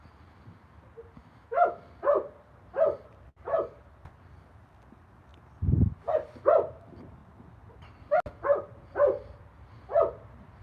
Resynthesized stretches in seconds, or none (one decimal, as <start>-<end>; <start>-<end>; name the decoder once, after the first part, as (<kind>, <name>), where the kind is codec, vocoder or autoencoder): 1.2-1.8 (autoencoder, DAC-VAE)